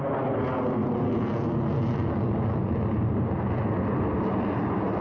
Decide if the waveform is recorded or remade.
recorded